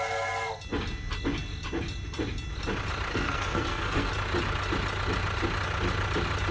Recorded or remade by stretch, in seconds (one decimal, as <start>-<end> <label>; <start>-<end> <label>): 0.0-3.1 recorded; 3.1-4.1 remade; 4.1-6.5 recorded